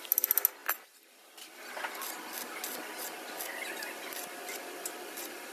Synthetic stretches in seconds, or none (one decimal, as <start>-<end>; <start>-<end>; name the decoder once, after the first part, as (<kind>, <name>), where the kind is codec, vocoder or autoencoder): none

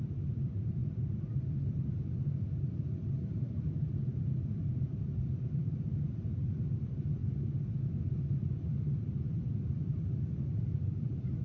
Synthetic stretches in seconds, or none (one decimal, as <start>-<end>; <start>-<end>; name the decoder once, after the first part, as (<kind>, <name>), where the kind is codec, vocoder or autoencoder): 0.0-7.2 (vocoder, BigVGAN v2); 8.1-11.4

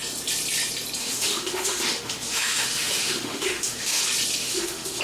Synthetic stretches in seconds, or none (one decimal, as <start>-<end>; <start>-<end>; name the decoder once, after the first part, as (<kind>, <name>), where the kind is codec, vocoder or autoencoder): 1.0-4.0 (autoencoder, DAC-VAE); 4.4-5.0

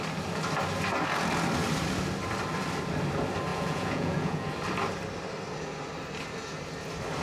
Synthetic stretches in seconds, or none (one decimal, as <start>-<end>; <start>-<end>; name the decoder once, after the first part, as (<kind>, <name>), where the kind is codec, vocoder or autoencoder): 3.5-4.5 (vocoder, Vocos)

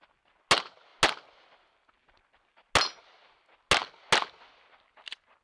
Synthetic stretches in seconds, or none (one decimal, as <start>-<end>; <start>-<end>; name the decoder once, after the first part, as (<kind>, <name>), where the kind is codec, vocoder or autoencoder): none

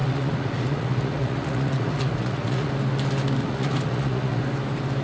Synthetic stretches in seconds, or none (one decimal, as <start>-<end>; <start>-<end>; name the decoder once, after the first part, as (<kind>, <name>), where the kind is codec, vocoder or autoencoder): 0.0-2.7 (vocoder, Vocos); 3.4-4.4

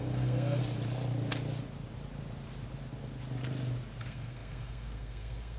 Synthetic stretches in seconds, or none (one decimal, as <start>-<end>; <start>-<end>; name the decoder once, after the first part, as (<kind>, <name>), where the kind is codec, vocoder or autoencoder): 0.0-0.6 (codec, SNAC); 4.0-5.6

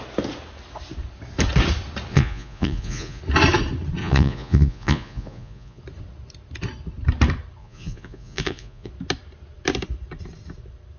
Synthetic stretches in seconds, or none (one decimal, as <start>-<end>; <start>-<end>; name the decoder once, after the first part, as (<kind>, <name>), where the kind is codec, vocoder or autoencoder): 2.1-3.2 (vocoder, Vocos); 4.0-5.8; 7.6-8.9